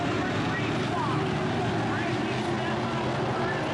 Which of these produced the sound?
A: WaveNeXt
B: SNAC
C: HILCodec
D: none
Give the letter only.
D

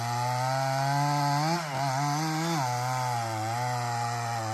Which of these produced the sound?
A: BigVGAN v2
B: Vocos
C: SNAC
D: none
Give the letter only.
D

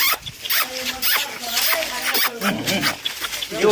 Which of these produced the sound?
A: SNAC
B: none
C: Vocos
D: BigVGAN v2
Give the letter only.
B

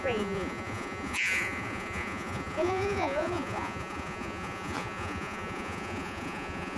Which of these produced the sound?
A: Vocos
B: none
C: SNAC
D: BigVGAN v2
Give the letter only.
A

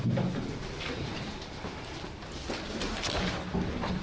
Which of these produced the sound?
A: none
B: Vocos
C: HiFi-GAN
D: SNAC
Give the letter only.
A